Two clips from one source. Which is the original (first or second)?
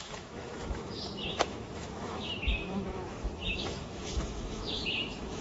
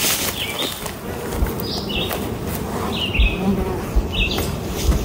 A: second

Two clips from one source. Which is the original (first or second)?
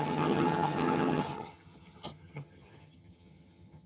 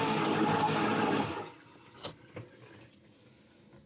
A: second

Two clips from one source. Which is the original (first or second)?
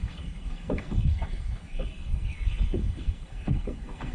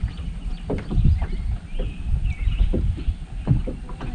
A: second